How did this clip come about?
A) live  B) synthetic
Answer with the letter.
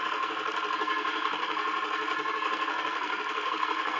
B